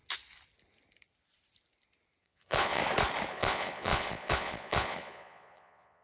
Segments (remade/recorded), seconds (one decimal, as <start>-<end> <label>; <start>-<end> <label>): 0.0-2.2 recorded; 2.2-2.8 remade; 2.8-3.3 recorded; 3.3-6.0 remade